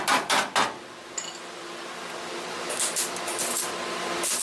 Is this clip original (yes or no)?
yes